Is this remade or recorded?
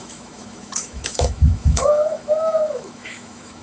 remade